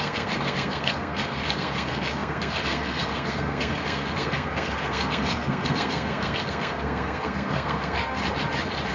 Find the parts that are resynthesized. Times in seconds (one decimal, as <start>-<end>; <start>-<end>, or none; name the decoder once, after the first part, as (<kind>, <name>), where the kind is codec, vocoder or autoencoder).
0.0-8.2 (codec, SNAC)